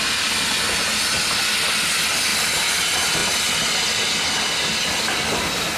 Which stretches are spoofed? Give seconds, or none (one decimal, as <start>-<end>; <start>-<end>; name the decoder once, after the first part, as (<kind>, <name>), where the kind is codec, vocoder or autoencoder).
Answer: none